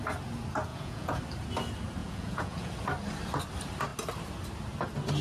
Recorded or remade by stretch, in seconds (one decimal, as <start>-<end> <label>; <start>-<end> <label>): 0.0-0.7 recorded; 0.7-1.2 remade; 1.2-2.0 recorded; 2.0-2.7 remade; 2.7-5.2 recorded

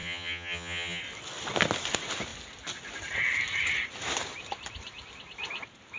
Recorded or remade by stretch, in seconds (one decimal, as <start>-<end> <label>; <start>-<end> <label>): 0.0-1.0 remade; 1.0-6.0 recorded